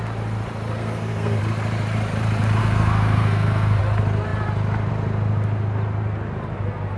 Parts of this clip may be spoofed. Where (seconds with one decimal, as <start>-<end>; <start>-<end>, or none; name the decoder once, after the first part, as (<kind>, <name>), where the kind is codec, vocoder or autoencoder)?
0.8-1.4 (codec, SNAC); 2.6-3.8